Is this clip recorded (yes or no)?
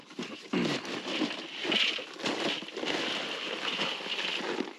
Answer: no